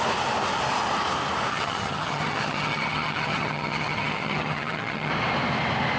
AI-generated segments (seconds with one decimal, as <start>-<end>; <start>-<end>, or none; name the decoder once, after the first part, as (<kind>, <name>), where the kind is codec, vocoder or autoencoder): 1.5-5.1 (vocoder, HiFi-GAN)